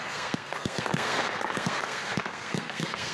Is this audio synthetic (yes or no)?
yes